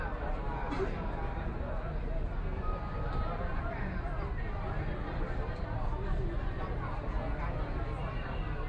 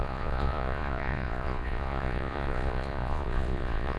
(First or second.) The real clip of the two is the first